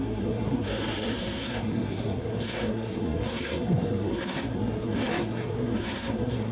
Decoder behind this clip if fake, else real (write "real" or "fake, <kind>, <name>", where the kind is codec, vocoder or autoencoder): fake, codec, SNAC